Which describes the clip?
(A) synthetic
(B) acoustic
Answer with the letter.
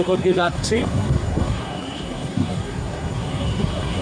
A